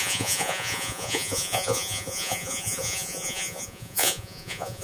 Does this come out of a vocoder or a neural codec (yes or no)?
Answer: yes